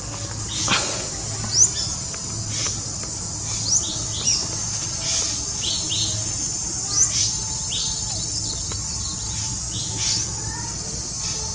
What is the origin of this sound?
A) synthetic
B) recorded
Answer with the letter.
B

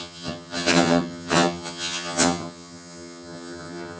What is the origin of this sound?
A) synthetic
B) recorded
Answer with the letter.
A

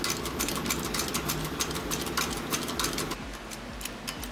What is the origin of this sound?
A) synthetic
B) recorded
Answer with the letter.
B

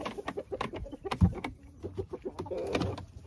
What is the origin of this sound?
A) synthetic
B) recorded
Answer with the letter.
B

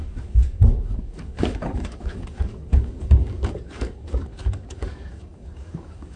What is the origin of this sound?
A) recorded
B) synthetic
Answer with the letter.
B